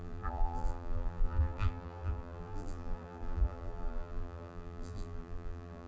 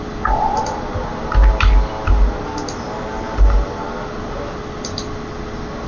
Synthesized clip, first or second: first